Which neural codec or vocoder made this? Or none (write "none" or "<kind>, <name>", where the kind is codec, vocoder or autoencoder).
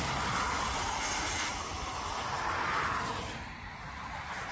none